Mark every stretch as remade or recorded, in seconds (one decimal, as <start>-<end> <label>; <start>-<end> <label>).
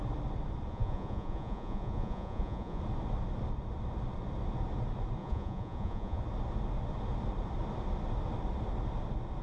0.0-0.7 recorded; 0.7-2.8 remade; 2.8-5.2 recorded; 5.2-6.2 remade; 6.2-9.4 recorded